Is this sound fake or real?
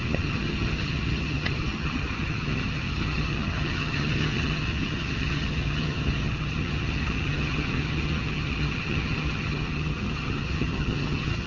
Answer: fake